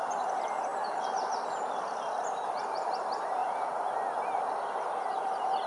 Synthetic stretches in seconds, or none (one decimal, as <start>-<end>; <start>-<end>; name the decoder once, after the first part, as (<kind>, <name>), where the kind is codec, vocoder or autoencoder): 0.0-3.4 (vocoder, BigVGAN v2); 4.7-5.7